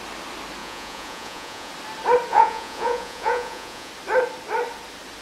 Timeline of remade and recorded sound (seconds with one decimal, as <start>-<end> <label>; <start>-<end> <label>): 0.0-0.6 recorded; 0.6-1.7 remade; 1.7-2.3 recorded; 2.3-3.9 remade; 3.9-5.2 recorded